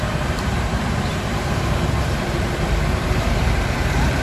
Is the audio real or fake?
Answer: fake